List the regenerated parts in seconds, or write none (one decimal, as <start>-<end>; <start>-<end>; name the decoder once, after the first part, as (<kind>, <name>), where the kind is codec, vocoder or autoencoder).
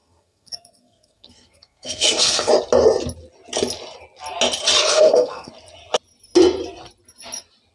0.0-2.5 (codec, SNAC); 4.9-5.5